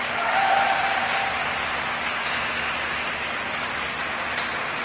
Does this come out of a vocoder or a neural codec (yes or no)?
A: no